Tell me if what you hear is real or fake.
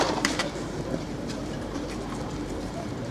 fake